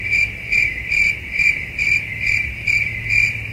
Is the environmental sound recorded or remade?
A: remade